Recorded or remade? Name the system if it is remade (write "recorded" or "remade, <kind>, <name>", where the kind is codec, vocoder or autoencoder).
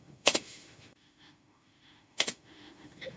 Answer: remade, autoencoder, DAC-VAE